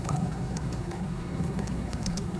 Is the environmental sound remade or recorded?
remade